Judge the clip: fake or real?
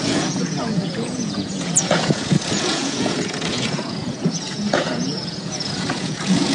fake